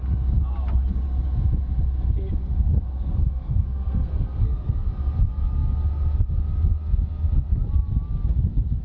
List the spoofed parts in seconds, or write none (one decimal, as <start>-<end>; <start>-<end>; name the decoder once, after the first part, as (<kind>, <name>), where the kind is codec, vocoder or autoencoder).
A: 2.4-4.9 (codec, SNAC)

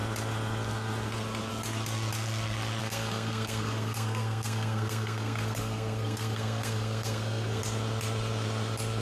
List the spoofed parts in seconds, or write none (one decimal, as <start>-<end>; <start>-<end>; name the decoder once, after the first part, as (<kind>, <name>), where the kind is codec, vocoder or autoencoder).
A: 2.8-7.6 (codec, SNAC)

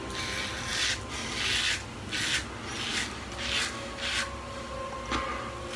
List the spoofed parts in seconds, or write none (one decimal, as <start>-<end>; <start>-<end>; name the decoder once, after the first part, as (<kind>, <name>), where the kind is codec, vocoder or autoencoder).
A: none

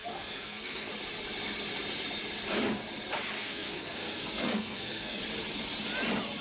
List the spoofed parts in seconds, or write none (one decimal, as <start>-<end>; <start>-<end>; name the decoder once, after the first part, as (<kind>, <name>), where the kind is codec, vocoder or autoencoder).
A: 0.0-0.9 (codec, SNAC); 3.4-5.2

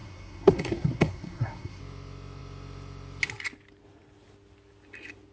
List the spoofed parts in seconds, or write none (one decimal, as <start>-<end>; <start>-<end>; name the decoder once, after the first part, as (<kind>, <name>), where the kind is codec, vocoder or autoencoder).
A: 0.0-1.8 (codec, SNAC)

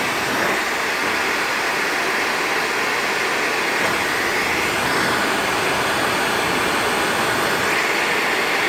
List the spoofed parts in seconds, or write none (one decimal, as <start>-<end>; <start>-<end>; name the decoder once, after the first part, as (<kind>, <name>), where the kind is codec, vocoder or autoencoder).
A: none

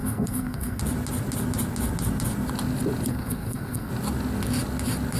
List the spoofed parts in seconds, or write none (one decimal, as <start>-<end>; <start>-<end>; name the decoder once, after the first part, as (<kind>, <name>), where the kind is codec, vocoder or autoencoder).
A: 0.0-0.8 (codec, SNAC); 3.1-3.9